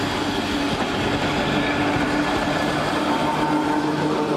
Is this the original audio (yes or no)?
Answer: yes